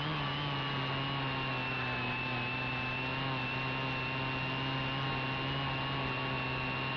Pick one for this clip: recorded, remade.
recorded